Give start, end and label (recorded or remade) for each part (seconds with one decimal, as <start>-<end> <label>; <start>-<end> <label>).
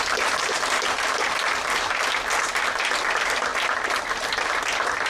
0.0-5.1 recorded